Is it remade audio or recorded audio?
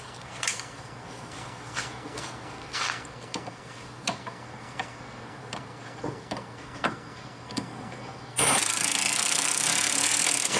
remade